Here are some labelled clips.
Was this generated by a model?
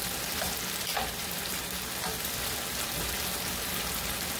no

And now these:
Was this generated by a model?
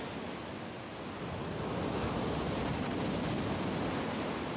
no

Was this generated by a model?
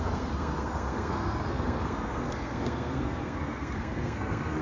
yes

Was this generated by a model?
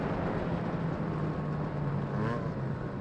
no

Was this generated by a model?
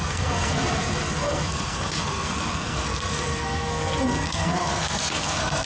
yes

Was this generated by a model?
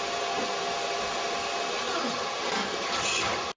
no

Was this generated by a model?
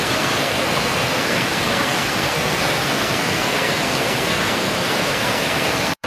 yes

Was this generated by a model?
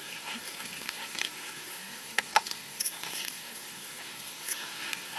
yes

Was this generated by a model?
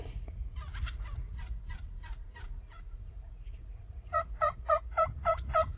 yes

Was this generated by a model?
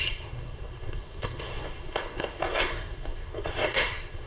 yes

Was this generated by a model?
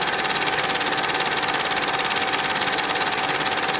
no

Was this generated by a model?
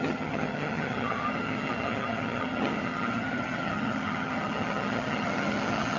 yes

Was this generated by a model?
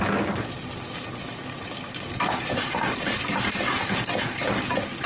no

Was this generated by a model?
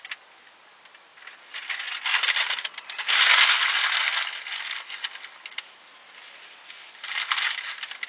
no